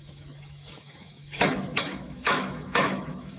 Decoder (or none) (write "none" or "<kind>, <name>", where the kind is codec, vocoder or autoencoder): autoencoder, DAC-VAE